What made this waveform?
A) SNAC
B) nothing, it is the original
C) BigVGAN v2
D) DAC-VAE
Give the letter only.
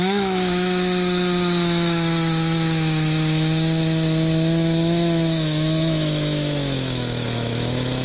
D